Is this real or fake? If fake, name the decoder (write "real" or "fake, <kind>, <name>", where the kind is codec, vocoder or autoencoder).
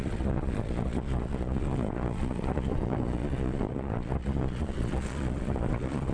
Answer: fake, vocoder, Vocos